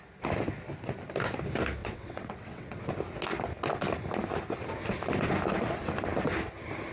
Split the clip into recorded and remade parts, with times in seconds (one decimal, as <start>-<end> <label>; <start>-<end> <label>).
0.0-1.8 recorded; 1.8-2.9 remade; 2.9-6.9 recorded